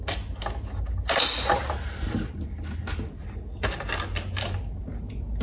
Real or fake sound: real